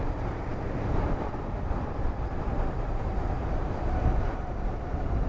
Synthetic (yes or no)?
yes